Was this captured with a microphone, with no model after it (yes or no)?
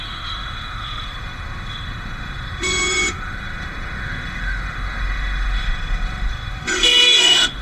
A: no